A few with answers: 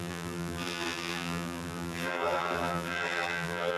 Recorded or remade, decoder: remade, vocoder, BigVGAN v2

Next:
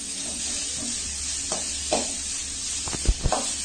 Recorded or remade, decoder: recorded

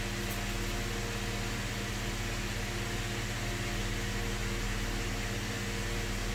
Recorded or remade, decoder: recorded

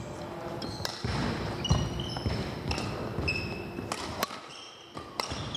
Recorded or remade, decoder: recorded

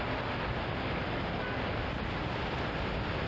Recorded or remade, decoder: recorded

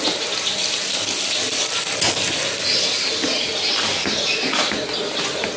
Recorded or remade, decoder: recorded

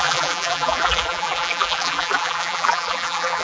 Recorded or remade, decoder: remade, vocoder, BigVGAN v2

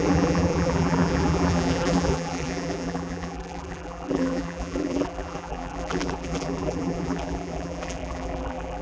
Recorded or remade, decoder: remade, vocoder, BigVGAN v2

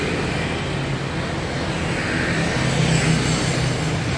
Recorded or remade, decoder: recorded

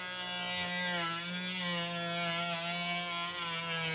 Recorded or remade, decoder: recorded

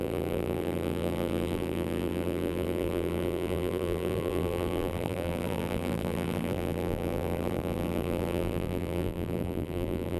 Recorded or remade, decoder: remade, vocoder, BigVGAN v2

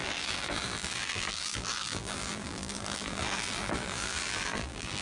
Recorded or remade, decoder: remade, vocoder, BigVGAN v2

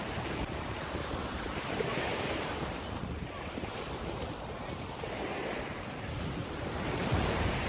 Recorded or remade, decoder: remade, vocoder, BigVGAN v2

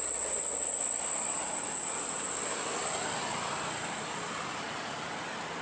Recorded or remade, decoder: remade, vocoder, BigVGAN v2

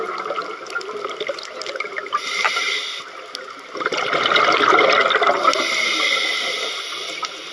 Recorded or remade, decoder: recorded